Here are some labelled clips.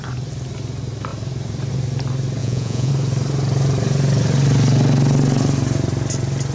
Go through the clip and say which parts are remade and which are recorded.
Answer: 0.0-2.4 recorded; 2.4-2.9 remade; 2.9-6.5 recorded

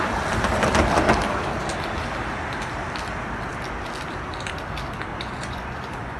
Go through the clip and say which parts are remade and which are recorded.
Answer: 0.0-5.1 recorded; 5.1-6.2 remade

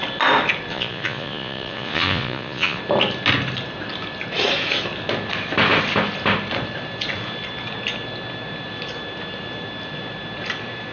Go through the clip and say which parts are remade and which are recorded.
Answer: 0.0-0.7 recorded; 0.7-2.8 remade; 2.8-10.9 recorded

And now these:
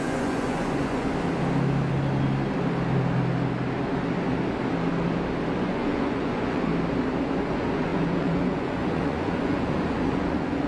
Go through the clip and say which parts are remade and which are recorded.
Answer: 0.0-1.1 remade; 1.1-5.5 recorded; 5.5-6.7 remade; 6.7-7.5 recorded; 7.5-10.7 remade

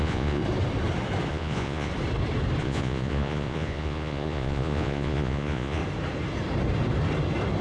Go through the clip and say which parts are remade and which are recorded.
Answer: 0.0-0.4 remade; 0.4-1.3 recorded; 1.3-1.9 remade; 1.9-2.6 recorded; 2.6-5.8 remade; 5.8-7.6 recorded